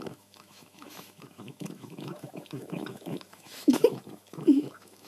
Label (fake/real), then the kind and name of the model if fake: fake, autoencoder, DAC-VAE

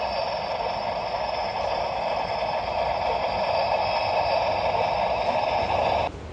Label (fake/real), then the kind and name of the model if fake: real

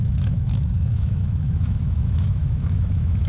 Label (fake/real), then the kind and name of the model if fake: fake, autoencoder, DAC-VAE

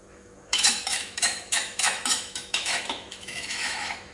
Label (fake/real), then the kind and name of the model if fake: fake, autoencoder, DAC-VAE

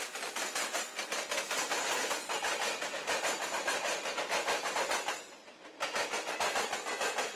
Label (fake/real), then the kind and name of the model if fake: real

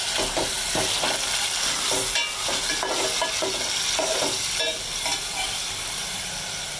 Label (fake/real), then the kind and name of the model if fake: real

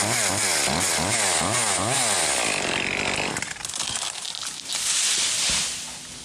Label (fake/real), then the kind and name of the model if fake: real